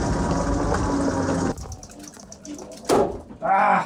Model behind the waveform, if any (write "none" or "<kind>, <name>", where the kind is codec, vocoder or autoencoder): none